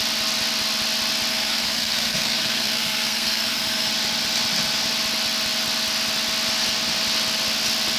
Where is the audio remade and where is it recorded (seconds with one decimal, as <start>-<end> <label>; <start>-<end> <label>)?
0.0-1.3 recorded; 1.3-3.9 remade; 3.9-8.0 recorded

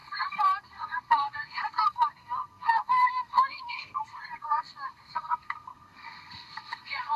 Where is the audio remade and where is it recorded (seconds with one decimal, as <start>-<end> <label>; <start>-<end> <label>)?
0.0-7.2 remade

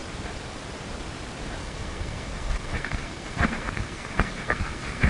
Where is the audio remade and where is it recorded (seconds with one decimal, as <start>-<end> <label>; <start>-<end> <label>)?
0.0-1.6 recorded; 1.6-5.1 remade

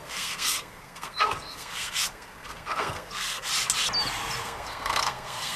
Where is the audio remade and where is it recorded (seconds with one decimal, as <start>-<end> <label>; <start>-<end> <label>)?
0.0-3.5 remade; 3.5-4.4 recorded; 4.4-5.6 remade

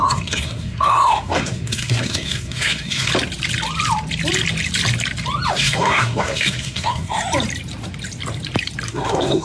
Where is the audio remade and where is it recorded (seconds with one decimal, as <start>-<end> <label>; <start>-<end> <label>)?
0.0-3.1 remade; 3.1-5.5 recorded; 5.5-7.2 remade; 7.2-8.9 recorded; 8.9-9.4 remade